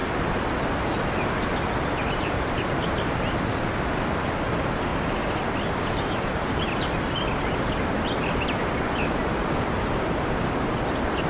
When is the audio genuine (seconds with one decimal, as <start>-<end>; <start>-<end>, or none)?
0.0-11.3